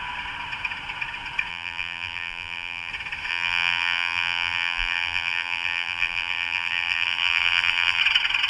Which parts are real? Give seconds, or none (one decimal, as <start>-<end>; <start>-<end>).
0.0-1.5; 2.9-3.3; 8.0-8.5